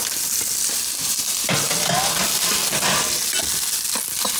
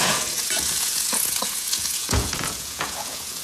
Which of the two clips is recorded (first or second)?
first